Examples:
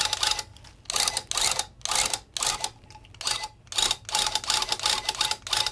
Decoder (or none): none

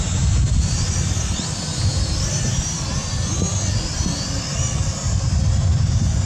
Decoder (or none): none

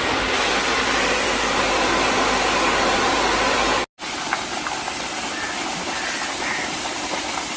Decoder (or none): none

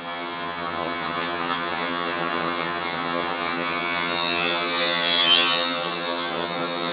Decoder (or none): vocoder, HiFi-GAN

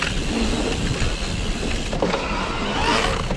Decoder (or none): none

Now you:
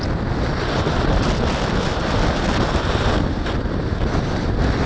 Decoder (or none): none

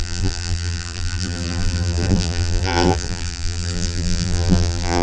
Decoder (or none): vocoder, BigVGAN v2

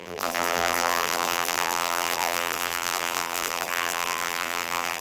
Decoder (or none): vocoder, BigVGAN v2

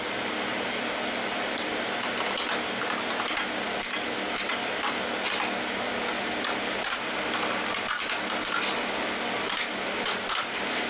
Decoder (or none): none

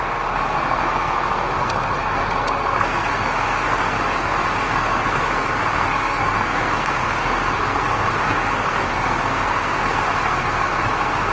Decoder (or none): codec, SNAC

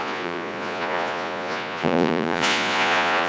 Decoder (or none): vocoder, Vocos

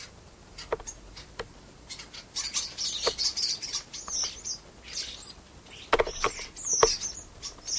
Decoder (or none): none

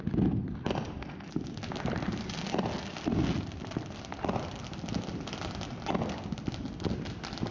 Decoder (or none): none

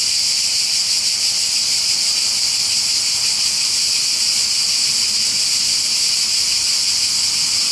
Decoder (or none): none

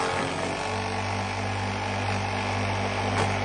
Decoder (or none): none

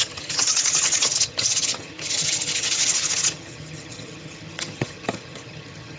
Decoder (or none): vocoder, HiFi-GAN